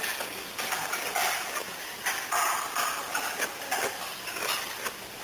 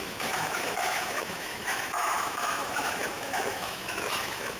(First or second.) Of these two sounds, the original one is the first